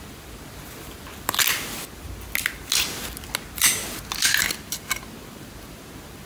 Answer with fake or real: real